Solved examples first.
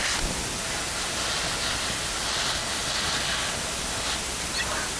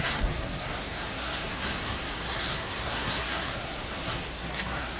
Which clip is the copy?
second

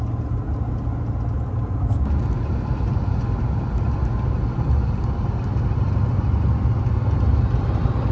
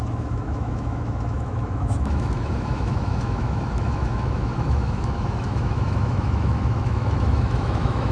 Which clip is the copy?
second